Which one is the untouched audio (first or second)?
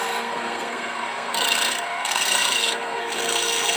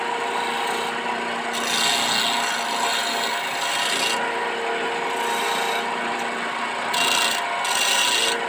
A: second